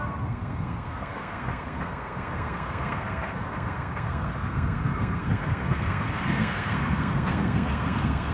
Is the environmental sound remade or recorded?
remade